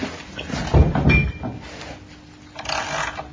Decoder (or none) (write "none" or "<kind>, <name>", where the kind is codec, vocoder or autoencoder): none